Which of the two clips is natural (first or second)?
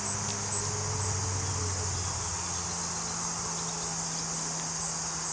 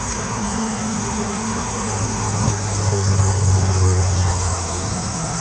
first